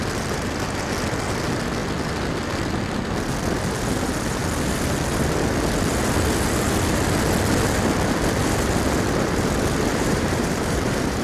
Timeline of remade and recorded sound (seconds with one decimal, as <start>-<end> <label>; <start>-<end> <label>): 0.0-9.9 recorded; 9.9-11.2 remade

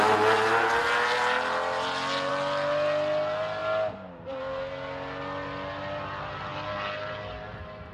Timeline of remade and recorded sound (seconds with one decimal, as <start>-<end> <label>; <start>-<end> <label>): 0.0-7.9 recorded

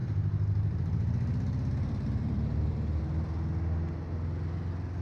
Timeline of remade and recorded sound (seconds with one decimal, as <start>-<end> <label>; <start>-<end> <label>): 0.0-3.0 remade; 3.0-5.0 recorded

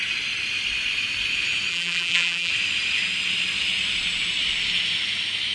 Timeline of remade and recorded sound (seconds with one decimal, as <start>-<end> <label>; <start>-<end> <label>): 0.0-1.7 recorded; 1.7-2.5 remade; 2.5-5.5 recorded

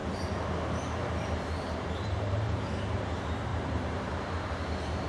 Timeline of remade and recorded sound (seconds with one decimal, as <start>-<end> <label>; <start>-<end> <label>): 0.0-3.1 remade; 3.1-3.5 recorded; 3.5-4.5 remade; 4.5-5.1 recorded

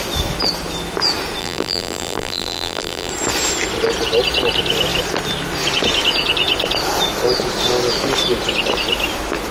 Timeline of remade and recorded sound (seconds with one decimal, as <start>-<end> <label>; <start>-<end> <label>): 0.0-1.4 recorded; 1.4-3.1 remade; 3.1-9.5 recorded

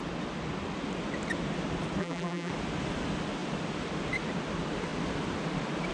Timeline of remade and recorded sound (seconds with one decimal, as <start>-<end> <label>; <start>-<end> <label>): 0.0-2.0 recorded; 2.0-2.5 remade; 2.5-5.9 recorded